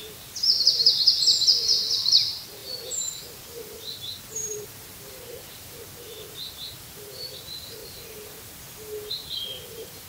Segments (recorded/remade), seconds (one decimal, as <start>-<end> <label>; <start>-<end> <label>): 0.0-7.8 remade; 7.8-9.1 recorded; 9.1-10.1 remade